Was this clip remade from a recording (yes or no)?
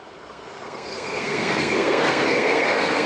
yes